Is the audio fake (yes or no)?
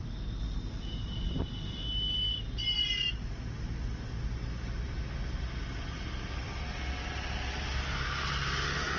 no